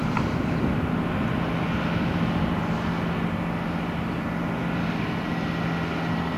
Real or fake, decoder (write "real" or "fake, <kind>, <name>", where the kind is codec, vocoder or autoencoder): real